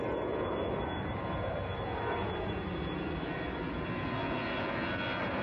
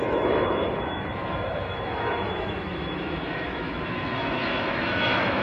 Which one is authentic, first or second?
first